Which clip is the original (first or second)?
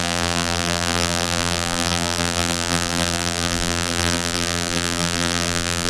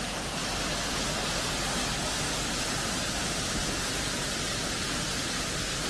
second